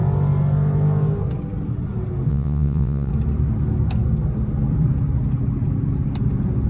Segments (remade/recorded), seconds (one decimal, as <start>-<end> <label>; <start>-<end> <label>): 0.0-2.3 recorded; 2.3-3.1 remade; 3.1-6.7 recorded